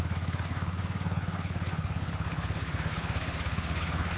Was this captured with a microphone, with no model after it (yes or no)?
no